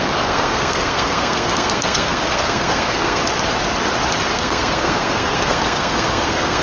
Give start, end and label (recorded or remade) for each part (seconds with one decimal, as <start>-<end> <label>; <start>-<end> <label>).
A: 0.0-3.2 remade; 3.2-4.3 recorded; 4.3-6.6 remade